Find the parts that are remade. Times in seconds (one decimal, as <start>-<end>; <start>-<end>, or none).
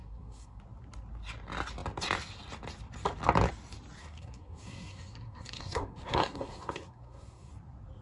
0.0-0.6; 4.0-7.5